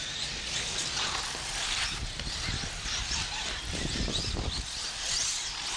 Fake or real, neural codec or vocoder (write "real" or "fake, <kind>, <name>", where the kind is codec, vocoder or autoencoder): real